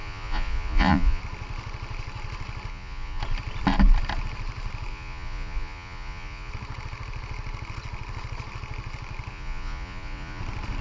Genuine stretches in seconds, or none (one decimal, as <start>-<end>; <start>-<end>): 1.2-2.7; 3.2-4.9; 6.5-9.3; 10.4-10.8